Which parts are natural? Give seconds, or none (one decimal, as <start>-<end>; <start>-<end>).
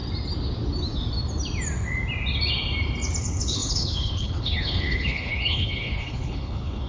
0.0-3.2